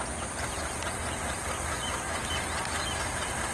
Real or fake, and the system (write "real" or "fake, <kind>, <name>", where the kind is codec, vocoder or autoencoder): real